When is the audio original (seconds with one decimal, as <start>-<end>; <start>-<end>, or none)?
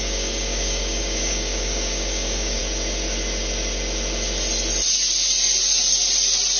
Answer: 2.6-6.6